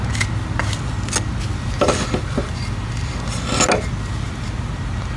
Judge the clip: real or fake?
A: real